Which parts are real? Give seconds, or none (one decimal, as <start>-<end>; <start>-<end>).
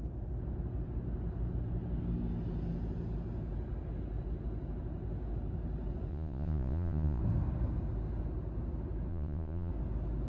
0.0-6.1; 7.2-9.1; 9.7-10.3